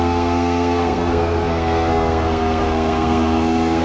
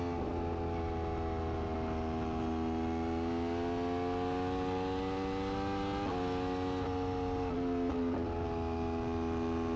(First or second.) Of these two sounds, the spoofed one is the first